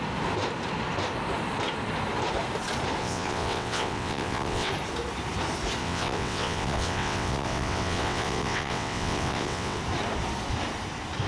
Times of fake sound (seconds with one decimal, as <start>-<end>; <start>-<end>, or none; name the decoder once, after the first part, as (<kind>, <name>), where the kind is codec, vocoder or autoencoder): 3.0-4.7 (vocoder, WaveNeXt); 5.8-9.8